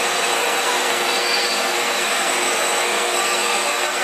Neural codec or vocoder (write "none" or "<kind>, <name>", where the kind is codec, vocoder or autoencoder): codec, SNAC